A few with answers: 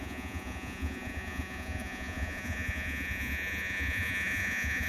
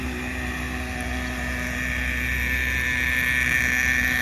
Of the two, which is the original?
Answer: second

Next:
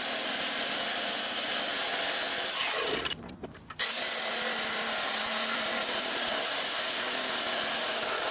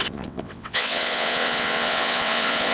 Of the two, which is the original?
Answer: first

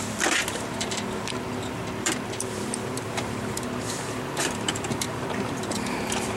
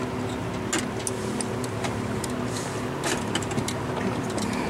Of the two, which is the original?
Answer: second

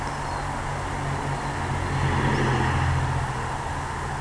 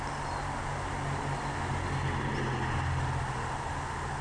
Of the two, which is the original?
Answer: first